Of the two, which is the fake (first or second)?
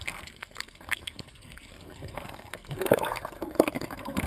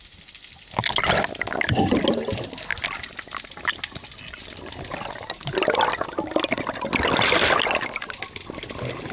first